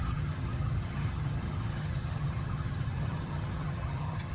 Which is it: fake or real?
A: fake